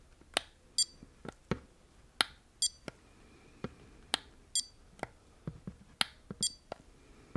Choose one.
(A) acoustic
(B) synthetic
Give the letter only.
A